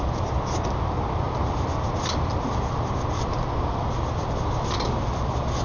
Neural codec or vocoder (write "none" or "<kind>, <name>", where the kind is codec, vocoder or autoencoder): none